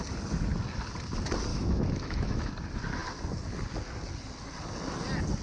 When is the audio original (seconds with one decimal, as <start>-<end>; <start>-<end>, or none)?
0.0-1.5; 2.5-5.4